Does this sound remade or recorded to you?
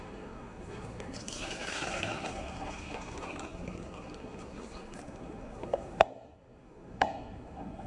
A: remade